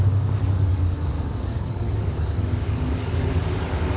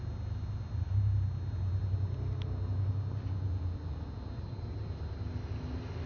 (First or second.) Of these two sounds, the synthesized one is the first